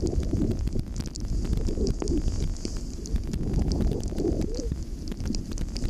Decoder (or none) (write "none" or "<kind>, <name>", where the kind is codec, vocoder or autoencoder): none